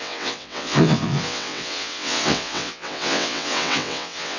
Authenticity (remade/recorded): remade